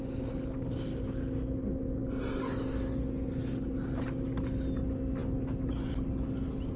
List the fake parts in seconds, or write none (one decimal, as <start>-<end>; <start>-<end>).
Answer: none